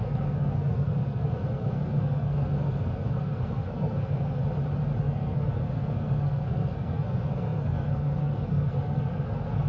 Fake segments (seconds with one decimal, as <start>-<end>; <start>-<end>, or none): 0.0-4.4; 5.0-9.7